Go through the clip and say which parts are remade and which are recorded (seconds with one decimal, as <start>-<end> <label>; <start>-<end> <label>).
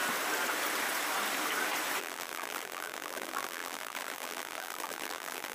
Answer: 0.0-2.0 recorded; 2.0-5.5 remade